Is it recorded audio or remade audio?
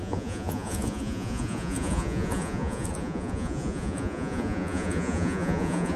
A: remade